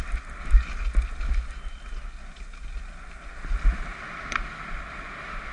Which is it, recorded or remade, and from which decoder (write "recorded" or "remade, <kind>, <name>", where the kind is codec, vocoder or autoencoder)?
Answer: recorded